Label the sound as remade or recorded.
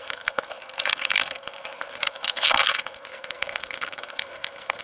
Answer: remade